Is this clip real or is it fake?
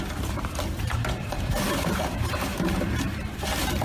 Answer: fake